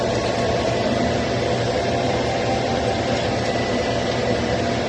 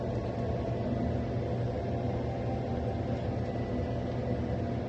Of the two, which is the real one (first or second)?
second